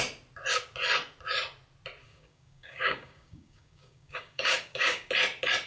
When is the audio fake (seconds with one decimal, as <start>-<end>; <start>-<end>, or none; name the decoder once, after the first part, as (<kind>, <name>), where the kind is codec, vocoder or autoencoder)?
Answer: 2.0-5.1 (codec, DAC)